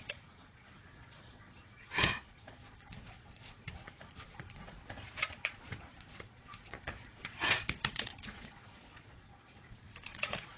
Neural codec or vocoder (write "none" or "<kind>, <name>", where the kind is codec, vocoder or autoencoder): vocoder, Vocos